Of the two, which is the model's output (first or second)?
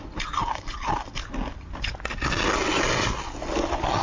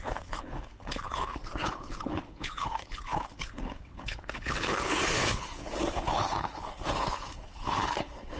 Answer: second